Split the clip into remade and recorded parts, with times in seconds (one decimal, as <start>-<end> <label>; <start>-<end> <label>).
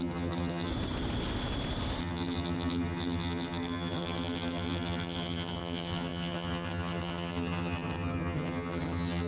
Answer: 0.0-0.7 remade; 0.7-2.0 recorded; 2.0-9.3 remade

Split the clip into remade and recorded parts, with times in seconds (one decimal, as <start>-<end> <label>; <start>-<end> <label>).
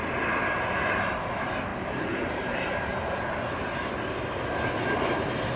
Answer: 0.0-0.9 recorded; 0.9-2.9 remade; 2.9-5.6 recorded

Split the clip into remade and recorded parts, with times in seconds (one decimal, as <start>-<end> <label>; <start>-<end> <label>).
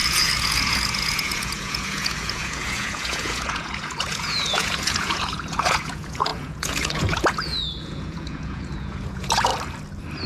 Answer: 0.0-9.5 remade; 9.5-10.3 recorded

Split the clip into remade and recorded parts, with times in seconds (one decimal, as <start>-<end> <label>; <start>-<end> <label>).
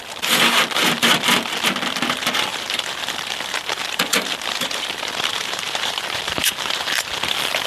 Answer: 0.0-2.5 recorded; 2.5-7.1 remade; 7.1-7.7 recorded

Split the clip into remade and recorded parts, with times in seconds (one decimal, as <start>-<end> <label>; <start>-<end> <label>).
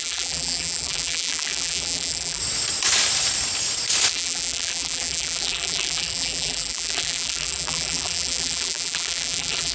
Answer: 0.0-2.4 remade; 2.4-4.1 recorded; 4.1-9.7 remade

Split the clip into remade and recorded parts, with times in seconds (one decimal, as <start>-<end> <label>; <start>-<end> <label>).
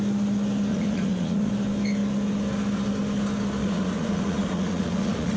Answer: 0.0-0.7 recorded; 0.7-1.5 remade; 1.5-3.6 recorded; 3.6-5.4 remade